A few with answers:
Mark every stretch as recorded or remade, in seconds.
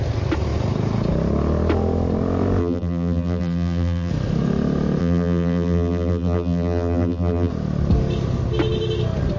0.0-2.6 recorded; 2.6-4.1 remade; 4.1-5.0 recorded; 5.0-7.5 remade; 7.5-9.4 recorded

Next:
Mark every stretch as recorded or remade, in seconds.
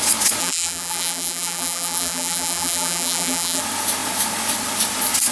0.0-0.4 recorded; 0.4-3.6 remade; 3.6-5.3 recorded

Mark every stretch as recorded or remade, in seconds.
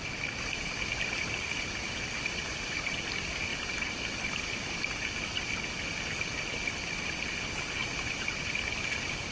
0.0-3.5 remade; 3.5-6.4 recorded; 6.4-7.8 remade; 7.8-8.3 recorded; 8.3-9.3 remade